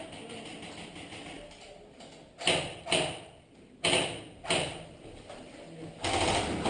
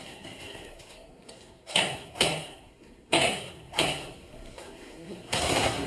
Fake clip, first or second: second